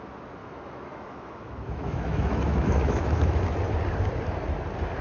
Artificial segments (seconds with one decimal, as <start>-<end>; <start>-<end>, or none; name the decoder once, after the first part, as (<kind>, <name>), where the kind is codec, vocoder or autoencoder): 0.4-3.4 (autoencoder, DAC-VAE)